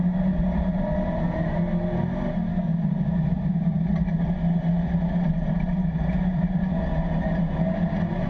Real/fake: fake